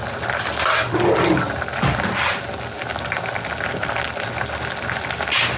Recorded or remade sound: recorded